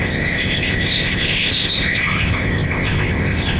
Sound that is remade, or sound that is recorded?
remade